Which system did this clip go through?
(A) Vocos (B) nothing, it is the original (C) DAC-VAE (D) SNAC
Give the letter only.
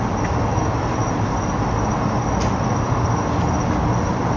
B